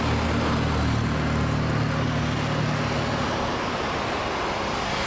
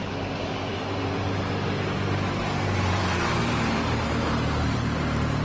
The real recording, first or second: first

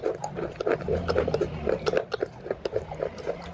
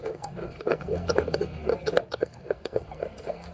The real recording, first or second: first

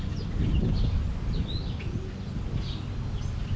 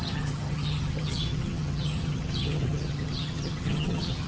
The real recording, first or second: first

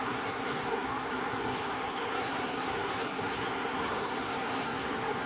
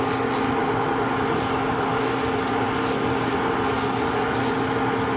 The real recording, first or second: second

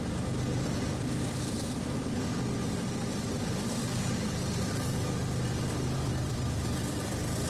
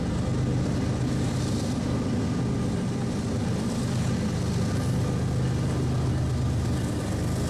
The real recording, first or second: second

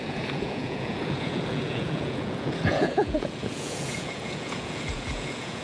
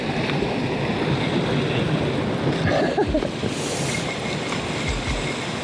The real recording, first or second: second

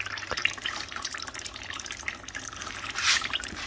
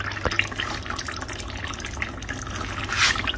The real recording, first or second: second